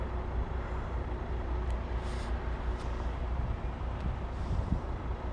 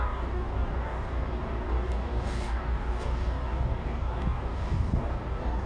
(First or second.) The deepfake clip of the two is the second